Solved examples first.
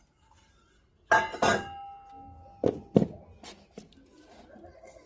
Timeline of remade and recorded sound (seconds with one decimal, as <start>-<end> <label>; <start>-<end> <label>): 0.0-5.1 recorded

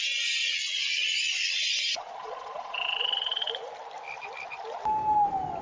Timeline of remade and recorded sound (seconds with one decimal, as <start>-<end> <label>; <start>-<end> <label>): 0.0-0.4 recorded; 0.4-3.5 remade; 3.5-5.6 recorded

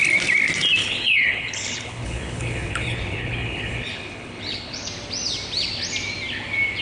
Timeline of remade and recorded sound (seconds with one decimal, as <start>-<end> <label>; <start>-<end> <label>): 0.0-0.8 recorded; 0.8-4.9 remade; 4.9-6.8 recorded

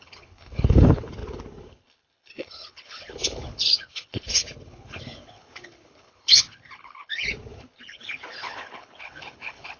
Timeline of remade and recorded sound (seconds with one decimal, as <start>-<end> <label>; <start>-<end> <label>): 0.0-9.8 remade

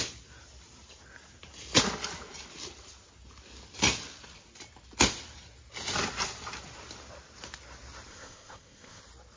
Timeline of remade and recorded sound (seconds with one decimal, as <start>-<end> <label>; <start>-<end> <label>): 0.0-8.1 recorded; 8.1-9.0 remade; 9.0-9.4 recorded

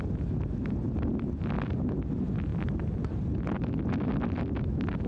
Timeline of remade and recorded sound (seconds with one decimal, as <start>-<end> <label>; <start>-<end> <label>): 0.0-5.1 recorded